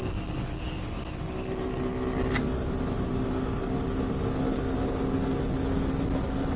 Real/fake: real